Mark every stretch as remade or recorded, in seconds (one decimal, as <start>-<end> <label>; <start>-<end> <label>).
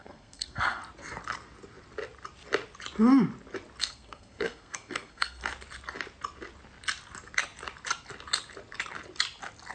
0.0-0.8 remade; 0.8-3.8 recorded; 3.8-5.4 remade; 5.4-9.7 recorded